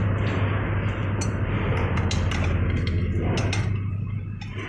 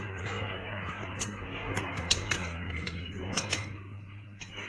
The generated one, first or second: second